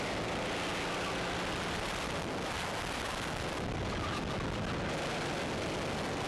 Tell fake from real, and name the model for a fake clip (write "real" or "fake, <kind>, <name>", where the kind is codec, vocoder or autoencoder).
real